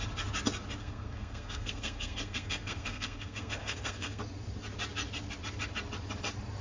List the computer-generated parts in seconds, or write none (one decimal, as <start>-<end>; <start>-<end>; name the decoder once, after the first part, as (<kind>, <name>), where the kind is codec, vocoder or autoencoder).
0.8-4.2 (codec, SNAC)